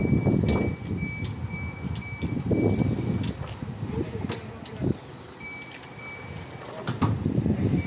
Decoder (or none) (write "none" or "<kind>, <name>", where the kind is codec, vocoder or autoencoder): none